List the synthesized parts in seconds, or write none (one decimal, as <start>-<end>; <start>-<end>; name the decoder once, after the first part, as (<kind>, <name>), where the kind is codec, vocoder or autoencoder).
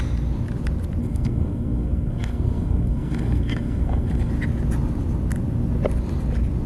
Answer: 1.0-4.3 (codec, SNAC)